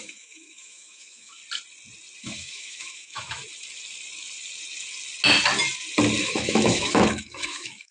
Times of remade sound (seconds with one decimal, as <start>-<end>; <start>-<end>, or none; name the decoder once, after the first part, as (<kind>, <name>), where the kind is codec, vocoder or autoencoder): 0.0-1.4 (autoencoder, DAC-VAE); 2.2-3.4; 6.2-7.9